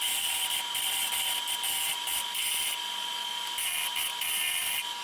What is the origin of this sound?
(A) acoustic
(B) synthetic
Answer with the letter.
A